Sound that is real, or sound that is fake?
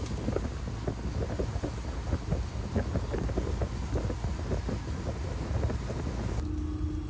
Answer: real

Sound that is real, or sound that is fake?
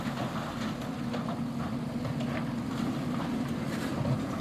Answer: real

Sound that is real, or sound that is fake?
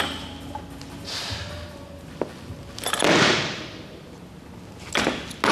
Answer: real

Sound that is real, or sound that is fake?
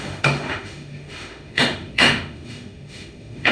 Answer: fake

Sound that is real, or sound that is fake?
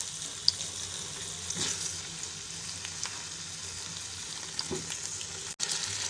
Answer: real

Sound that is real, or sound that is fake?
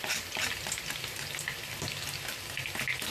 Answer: real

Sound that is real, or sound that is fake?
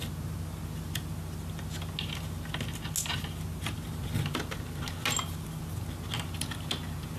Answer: real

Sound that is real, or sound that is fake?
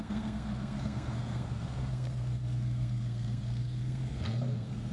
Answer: fake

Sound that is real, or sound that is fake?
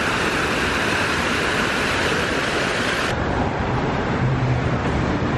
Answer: fake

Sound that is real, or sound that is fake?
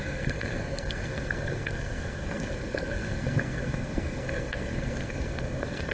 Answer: fake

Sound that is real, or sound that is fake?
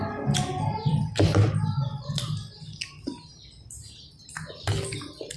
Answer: real